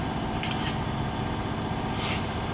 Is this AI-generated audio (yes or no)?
no